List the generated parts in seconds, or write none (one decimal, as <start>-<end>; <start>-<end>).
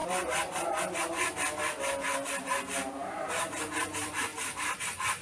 2.9-4.3; 4.8-5.2